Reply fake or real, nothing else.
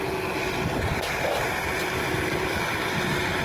real